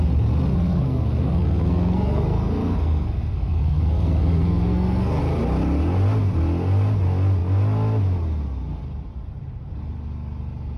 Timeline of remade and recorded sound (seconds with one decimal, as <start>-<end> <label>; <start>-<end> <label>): 0.0-0.5 recorded; 0.5-5.2 remade; 5.2-10.8 recorded